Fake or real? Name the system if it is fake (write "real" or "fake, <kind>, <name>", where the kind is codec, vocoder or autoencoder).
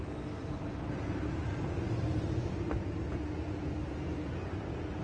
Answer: real